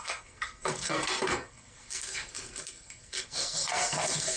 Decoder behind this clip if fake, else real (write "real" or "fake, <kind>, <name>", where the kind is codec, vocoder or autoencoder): fake, codec, SNAC